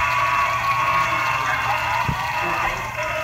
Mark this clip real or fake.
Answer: fake